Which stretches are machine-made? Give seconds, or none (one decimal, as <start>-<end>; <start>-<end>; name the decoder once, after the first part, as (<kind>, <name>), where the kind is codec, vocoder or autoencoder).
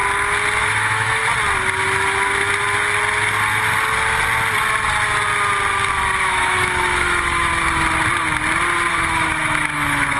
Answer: 0.6-1.2 (autoencoder, DAC-VAE); 6.2-7.5; 8.9-10.2